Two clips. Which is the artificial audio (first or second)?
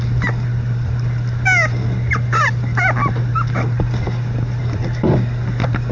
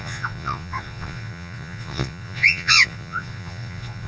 second